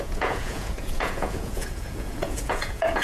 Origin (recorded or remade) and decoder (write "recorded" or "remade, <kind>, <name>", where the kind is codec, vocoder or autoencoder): remade, vocoder, Vocos